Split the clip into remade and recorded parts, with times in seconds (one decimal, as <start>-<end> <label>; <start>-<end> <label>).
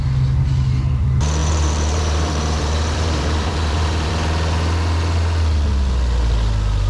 0.0-1.4 recorded; 1.4-4.1 remade; 4.1-6.9 recorded